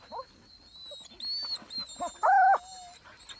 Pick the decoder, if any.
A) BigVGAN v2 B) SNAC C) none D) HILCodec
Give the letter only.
C